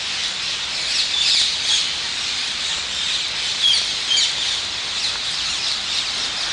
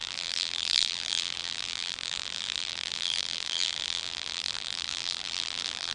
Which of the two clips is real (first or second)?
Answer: first